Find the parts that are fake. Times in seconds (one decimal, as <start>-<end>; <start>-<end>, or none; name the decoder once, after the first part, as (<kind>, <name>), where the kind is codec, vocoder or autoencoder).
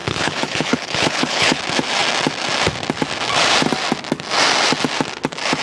0.0-1.6 (codec, HILCodec)